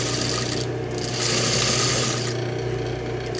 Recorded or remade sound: recorded